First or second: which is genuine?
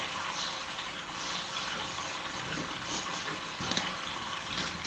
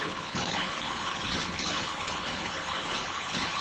first